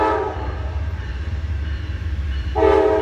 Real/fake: fake